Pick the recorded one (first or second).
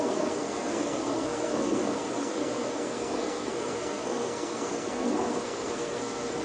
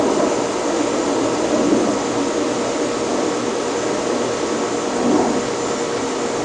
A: second